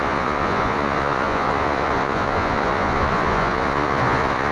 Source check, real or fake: fake